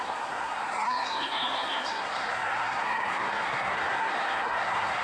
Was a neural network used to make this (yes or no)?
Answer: yes